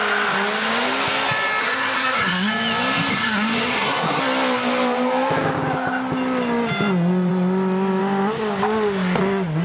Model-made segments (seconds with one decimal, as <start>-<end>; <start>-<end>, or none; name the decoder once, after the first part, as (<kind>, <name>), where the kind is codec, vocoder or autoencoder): 1.6-2.5 (codec, SNAC); 3.1-4.2